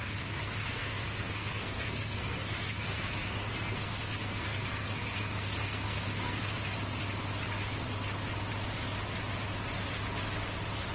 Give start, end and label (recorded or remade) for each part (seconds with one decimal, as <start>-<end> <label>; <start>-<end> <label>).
0.0-6.5 remade; 6.5-10.9 recorded